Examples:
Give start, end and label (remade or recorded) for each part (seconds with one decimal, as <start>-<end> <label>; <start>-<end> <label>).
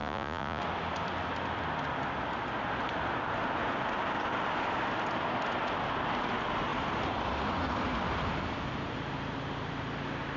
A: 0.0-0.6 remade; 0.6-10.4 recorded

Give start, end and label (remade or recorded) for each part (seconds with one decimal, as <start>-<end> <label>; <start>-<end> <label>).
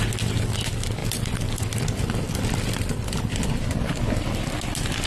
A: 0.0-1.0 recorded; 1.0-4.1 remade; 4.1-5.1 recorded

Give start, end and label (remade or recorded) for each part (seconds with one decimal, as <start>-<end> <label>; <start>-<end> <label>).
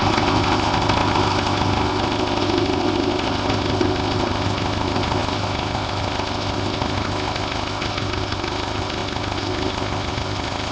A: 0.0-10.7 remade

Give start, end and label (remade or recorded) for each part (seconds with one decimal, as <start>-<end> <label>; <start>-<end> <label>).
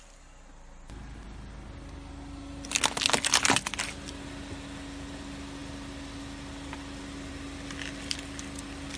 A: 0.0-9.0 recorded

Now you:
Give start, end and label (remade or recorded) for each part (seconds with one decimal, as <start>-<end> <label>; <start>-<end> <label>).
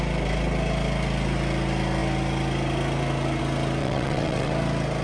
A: 0.0-3.8 recorded; 3.8-4.5 remade; 4.5-5.0 recorded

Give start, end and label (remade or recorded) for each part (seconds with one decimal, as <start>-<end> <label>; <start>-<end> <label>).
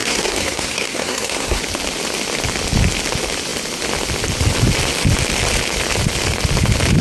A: 0.0-1.6 remade; 1.6-7.0 recorded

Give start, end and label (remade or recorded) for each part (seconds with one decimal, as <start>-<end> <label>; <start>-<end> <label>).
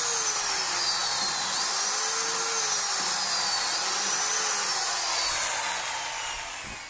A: 0.0-6.9 recorded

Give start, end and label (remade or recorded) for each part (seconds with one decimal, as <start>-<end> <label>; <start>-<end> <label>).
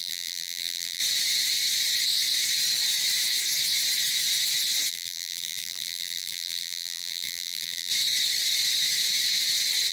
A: 0.0-1.0 remade; 1.0-4.9 recorded; 4.9-7.9 remade; 7.9-9.9 recorded